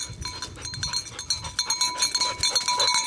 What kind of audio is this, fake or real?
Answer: real